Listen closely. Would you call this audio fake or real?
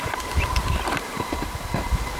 real